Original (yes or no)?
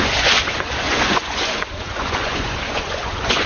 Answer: no